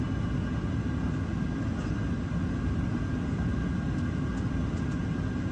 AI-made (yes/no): no